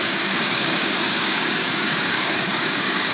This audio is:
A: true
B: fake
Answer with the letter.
B